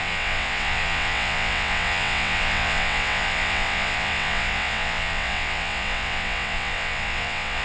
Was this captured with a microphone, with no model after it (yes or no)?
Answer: no